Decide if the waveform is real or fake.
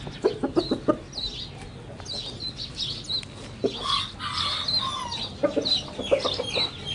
real